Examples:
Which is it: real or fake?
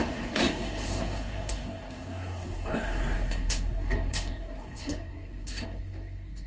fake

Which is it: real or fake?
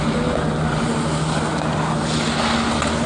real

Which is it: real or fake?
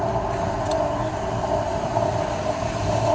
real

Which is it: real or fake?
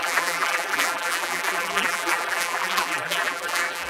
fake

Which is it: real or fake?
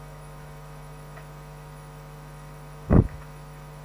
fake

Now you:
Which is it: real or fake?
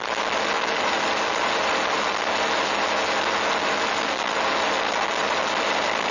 real